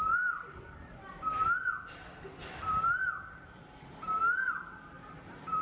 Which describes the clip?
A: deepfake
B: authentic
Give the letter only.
A